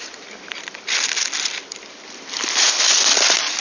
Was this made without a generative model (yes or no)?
no